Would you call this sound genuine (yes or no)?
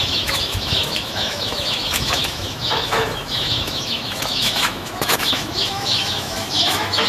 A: no